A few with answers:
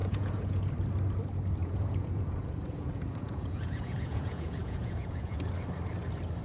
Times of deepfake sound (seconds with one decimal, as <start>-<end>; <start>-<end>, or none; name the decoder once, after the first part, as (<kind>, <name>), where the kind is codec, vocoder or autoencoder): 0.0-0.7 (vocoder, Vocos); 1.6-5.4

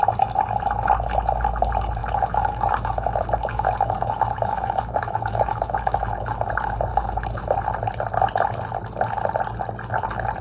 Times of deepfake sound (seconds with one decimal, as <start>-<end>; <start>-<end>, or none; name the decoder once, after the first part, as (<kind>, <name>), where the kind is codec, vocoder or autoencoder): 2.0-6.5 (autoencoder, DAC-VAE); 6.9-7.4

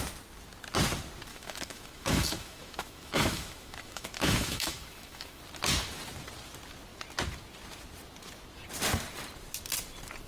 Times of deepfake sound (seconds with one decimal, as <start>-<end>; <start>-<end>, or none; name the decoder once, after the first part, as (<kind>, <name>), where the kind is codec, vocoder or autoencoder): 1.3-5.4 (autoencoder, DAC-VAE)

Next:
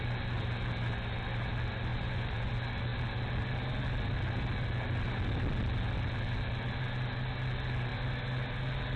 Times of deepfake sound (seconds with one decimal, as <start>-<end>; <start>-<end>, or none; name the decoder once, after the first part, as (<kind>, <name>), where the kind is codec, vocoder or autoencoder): 1.9-2.5 (vocoder, Vocos)